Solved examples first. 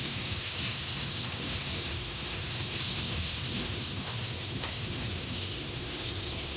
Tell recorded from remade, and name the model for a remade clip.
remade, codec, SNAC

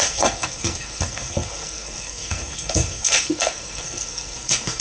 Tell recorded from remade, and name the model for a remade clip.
remade, codec, SNAC